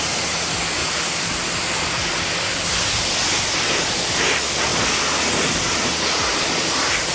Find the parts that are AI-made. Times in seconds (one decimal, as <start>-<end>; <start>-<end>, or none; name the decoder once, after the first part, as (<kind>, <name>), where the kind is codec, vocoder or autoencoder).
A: 0.8-4.2 (vocoder, BigVGAN v2)